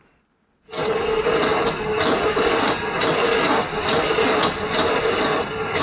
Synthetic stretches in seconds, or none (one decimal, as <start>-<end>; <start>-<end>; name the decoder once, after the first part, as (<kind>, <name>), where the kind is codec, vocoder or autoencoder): none